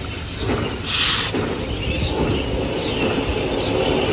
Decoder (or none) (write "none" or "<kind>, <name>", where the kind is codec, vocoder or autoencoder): none